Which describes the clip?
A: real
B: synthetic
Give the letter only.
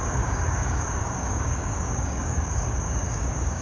B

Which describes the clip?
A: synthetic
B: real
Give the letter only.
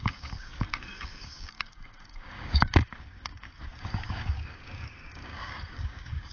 A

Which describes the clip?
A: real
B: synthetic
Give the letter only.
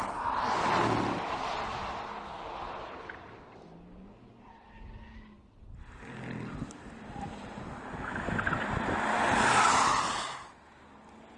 A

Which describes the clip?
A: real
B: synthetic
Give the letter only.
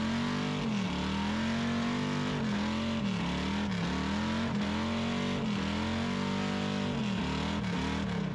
A